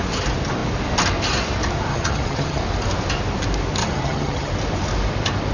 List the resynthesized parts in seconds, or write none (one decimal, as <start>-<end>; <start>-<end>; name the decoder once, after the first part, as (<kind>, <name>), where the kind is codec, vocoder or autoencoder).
1.9-2.6 (vocoder, HiFi-GAN); 3.8-4.5